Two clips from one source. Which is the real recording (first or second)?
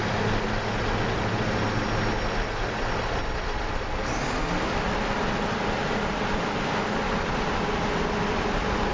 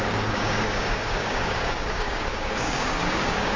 first